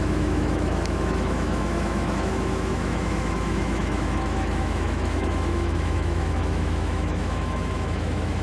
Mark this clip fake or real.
fake